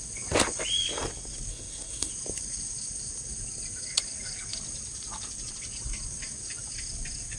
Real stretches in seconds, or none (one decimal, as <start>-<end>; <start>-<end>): 0.0-1.5; 2.1-7.4